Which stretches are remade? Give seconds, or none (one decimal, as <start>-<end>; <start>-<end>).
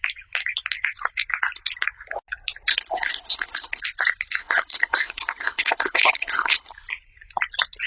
2.7-3.8; 4.4-6.7